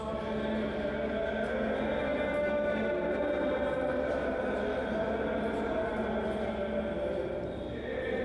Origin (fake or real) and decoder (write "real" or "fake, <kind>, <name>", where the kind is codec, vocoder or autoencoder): real